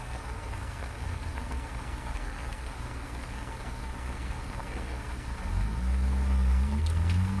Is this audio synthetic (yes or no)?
yes